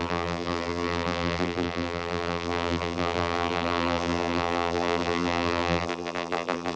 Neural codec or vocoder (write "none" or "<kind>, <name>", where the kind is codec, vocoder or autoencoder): vocoder, BigVGAN v2